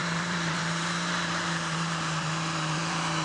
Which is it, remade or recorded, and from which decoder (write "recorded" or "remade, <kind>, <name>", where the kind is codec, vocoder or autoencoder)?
remade, vocoder, BigVGAN v2